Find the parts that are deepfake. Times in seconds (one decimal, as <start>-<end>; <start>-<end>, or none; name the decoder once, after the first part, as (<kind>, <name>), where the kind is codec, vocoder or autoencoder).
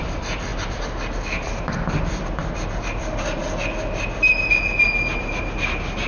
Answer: 0.0-3.4 (vocoder, BigVGAN v2); 5.3-6.1